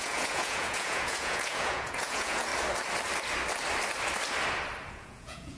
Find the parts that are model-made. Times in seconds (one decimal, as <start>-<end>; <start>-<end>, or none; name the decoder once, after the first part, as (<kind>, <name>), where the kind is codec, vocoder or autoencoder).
0.0-2.5 (vocoder, Vocos); 4.9-5.6

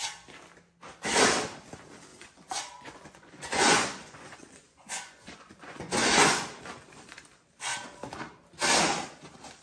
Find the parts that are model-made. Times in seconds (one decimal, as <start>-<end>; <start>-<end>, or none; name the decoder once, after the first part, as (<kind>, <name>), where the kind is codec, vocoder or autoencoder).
2.1-6.6 (vocoder, Vocos)

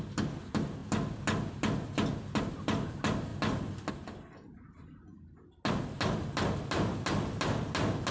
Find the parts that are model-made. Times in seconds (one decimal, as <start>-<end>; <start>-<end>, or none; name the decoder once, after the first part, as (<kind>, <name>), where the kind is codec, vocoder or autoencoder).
none

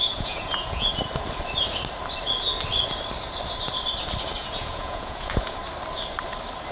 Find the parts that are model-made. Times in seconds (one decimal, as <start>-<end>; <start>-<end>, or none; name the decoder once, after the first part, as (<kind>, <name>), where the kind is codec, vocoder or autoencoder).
0.0-0.9 (vocoder, Vocos); 4.4-5.6

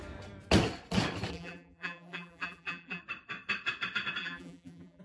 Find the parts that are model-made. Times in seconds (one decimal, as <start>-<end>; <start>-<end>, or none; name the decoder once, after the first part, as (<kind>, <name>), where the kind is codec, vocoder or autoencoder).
1.3-3.0 (vocoder, BigVGAN v2); 4.2-5.0